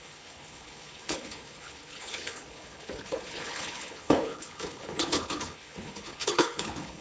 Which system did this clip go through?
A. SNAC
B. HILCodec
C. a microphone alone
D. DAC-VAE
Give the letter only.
B